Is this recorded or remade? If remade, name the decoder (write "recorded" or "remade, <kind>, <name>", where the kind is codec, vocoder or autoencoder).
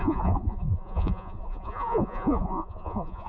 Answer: remade, vocoder, Vocos